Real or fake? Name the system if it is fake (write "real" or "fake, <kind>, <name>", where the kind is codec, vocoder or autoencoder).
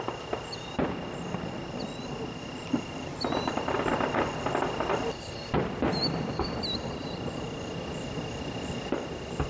real